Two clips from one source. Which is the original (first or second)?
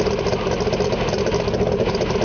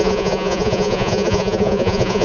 first